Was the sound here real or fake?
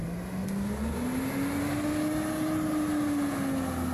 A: real